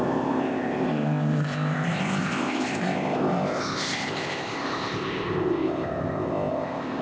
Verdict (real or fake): fake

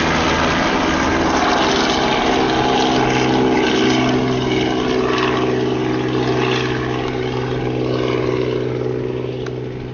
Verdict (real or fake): real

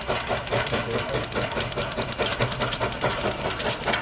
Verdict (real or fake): real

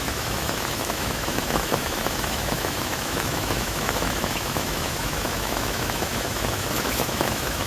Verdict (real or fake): fake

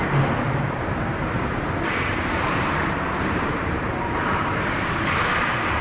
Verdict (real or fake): fake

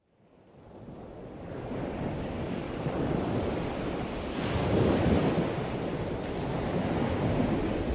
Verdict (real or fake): real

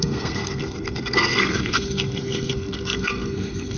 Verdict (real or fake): fake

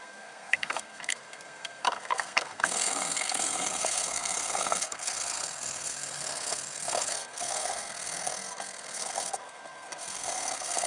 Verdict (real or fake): fake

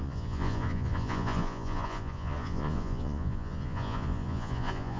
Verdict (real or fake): fake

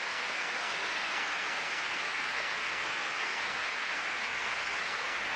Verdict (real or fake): fake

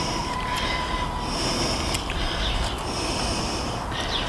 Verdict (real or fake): real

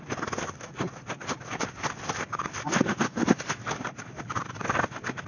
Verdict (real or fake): real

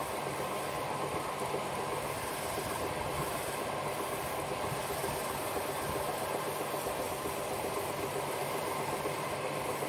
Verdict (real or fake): real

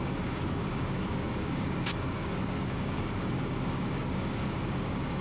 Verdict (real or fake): fake